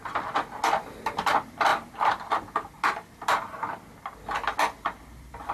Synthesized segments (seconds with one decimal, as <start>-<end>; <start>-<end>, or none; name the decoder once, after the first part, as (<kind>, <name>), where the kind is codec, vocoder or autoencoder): none